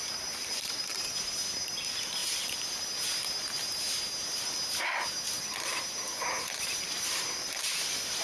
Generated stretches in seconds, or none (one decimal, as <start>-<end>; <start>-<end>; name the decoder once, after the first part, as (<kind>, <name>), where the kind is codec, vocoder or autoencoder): 0.0-0.9 (vocoder, BigVGAN v2); 1.8-2.2; 6.4-8.2

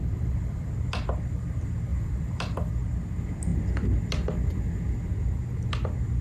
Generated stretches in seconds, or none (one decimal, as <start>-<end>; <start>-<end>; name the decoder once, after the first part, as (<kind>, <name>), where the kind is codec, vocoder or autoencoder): 0.0-0.7 (vocoder, BigVGAN v2); 1.9-2.7

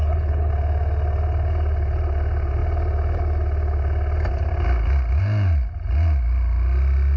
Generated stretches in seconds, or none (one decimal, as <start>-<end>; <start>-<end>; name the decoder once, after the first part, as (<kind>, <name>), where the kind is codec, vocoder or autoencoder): 0.0-0.5 (codec, HILCodec)

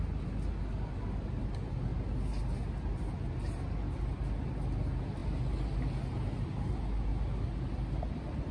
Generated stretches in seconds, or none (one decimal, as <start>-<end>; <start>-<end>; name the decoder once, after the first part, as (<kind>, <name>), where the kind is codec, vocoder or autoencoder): none

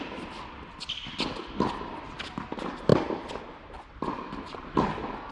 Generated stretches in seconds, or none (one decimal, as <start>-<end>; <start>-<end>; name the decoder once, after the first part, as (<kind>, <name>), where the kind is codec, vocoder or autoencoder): none